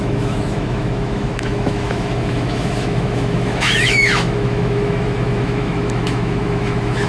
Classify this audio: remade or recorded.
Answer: remade